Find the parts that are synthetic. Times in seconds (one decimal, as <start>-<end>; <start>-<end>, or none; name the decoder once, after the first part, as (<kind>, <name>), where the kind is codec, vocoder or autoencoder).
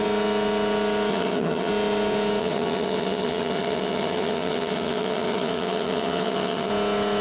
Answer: 1.1-1.7 (vocoder, HiFi-GAN); 2.4-6.7